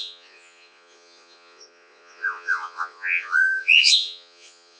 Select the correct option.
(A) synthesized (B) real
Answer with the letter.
A